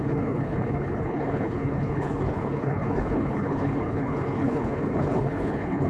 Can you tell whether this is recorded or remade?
remade